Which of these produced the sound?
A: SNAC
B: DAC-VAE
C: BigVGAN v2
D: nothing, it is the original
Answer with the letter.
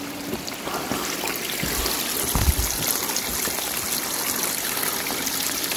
D